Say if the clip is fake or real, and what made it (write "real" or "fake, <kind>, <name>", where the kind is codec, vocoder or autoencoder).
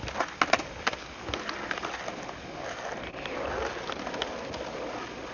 real